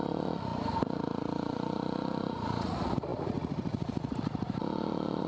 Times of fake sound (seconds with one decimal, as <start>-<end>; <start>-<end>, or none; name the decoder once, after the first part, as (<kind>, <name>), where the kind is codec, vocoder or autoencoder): 0.0-5.3 (vocoder, Vocos)